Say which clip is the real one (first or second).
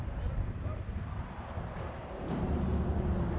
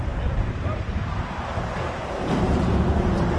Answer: first